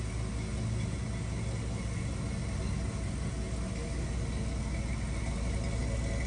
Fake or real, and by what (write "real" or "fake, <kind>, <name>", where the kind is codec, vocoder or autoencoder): real